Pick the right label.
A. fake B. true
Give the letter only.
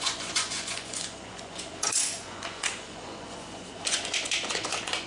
A